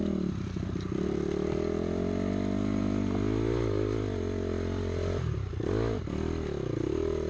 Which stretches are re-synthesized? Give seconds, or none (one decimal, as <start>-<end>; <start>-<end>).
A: none